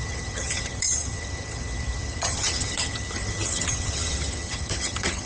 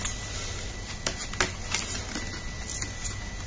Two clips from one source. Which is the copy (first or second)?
first